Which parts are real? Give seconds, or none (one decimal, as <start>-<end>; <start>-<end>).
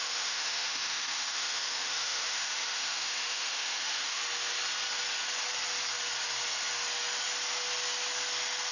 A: 4.2-8.7